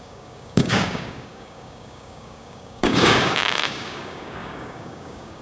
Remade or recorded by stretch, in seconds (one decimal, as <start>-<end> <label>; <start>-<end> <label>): 0.0-5.4 remade